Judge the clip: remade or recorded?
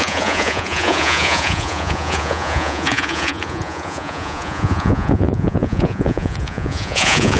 remade